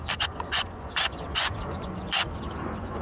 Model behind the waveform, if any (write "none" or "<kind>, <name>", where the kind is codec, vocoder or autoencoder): vocoder, Vocos